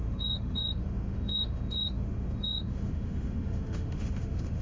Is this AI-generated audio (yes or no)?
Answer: yes